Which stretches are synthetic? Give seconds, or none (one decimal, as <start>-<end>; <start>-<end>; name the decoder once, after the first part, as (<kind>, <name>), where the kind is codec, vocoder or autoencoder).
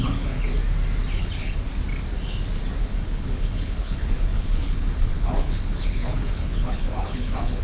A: 0.0-0.5 (codec, HILCodec); 1.2-1.7; 2.8-7.6